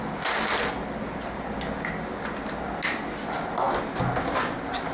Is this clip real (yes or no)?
yes